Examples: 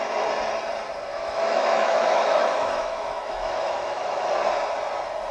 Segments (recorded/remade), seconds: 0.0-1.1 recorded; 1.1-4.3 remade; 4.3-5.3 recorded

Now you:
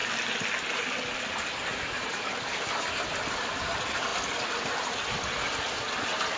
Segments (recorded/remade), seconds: 0.0-6.4 recorded

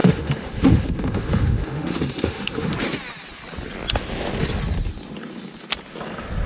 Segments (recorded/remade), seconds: 0.0-2.7 remade; 2.7-6.5 recorded